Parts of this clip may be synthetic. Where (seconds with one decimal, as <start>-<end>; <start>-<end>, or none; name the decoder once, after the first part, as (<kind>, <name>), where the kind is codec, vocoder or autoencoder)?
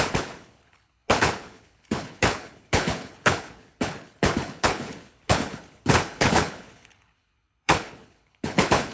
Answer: 0.0-8.9 (codec, HILCodec)